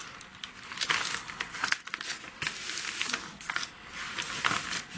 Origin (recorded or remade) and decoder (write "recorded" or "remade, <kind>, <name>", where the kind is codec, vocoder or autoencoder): recorded